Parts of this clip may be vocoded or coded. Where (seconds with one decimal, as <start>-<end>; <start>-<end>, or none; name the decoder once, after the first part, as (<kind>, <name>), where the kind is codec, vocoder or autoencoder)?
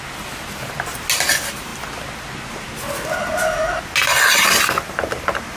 none